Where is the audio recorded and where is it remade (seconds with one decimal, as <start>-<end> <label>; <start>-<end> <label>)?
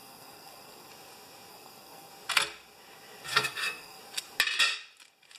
0.0-0.9 remade; 0.9-1.5 recorded; 1.5-2.1 remade; 2.1-3.3 recorded; 3.3-4.0 remade; 4.0-5.4 recorded